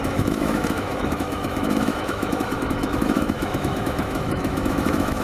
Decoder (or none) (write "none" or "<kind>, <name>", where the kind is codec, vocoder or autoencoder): autoencoder, DAC-VAE